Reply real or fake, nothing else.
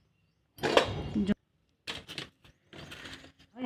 real